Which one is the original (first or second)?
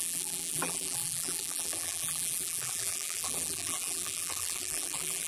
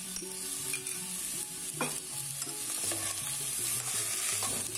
second